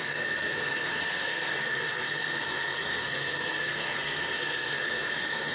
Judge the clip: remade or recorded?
remade